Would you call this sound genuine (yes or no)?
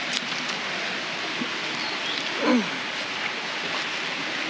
yes